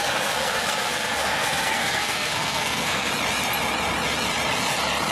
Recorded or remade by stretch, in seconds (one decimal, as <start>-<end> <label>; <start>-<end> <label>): 0.0-3.1 remade; 3.1-5.1 recorded